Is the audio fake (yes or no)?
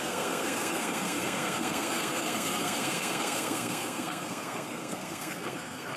yes